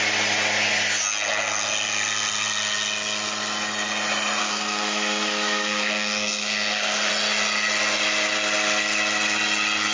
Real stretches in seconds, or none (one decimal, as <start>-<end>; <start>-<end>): 0.0-4.4; 7.1-9.9